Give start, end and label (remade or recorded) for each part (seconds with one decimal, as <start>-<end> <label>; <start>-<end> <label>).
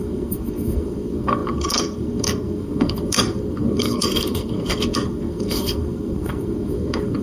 0.0-7.2 remade